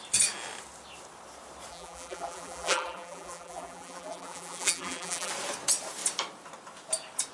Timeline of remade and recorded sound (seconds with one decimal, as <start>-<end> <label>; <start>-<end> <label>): 0.0-1.7 recorded; 1.7-5.3 remade; 5.3-7.3 recorded

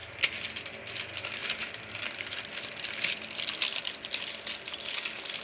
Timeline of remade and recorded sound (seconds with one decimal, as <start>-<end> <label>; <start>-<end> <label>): 0.0-1.4 recorded; 1.4-4.2 remade; 4.2-5.4 recorded

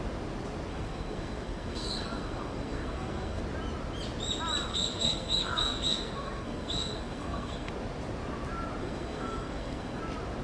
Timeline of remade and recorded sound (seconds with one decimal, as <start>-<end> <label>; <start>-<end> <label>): 0.0-0.7 recorded; 0.7-3.4 remade; 3.4-4.7 recorded; 4.7-7.7 remade; 7.7-8.8 recorded; 8.8-10.0 remade; 10.0-10.4 recorded

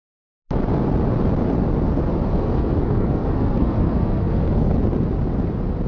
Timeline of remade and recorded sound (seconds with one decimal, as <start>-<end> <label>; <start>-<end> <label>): 0.0-2.3 recorded; 2.3-4.8 remade; 4.8-5.9 recorded

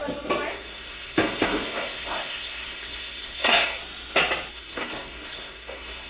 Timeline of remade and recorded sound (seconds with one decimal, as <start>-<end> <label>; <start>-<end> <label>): 0.0-0.5 recorded; 0.5-3.8 remade; 3.8-4.5 recorded; 4.5-6.1 remade

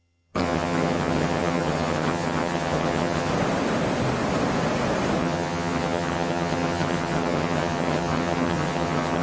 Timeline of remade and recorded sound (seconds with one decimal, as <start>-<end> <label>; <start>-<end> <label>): 0.0-3.3 remade; 3.3-5.2 recorded; 5.2-9.2 remade